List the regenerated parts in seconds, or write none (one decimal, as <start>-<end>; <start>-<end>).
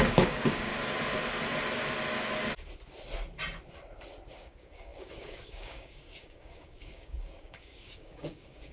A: 0.0-0.7; 4.3-8.7